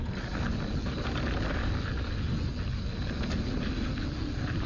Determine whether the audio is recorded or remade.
recorded